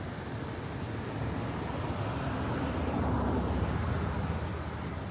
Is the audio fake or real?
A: real